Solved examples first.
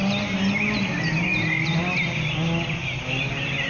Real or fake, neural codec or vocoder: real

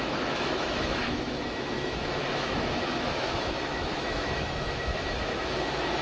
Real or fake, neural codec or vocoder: fake, autoencoder, DAC-VAE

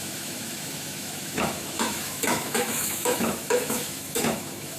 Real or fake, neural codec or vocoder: fake, autoencoder, DAC-VAE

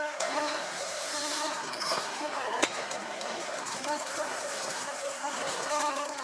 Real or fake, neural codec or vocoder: fake, codec, SNAC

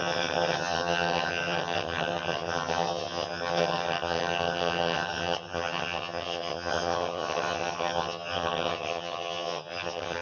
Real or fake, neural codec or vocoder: fake, vocoder, HiFi-GAN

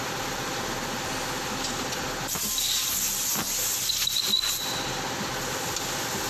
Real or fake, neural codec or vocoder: real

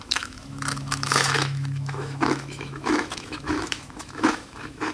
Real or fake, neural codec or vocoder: fake, autoencoder, DAC-VAE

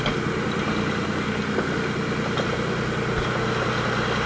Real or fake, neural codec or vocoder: real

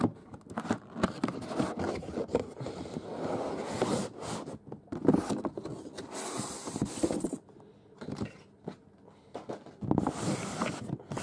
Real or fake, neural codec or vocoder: real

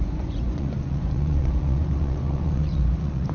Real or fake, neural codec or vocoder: fake, vocoder, Vocos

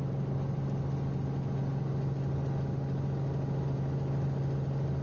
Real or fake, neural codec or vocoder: real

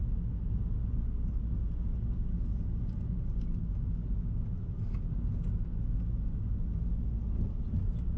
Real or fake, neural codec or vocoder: real